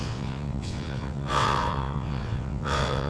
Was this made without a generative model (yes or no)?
no